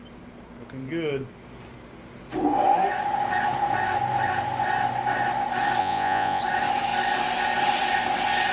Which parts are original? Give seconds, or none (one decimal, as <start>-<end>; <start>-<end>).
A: 0.0-5.8; 6.4-8.5